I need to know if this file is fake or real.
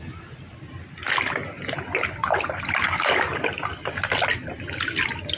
real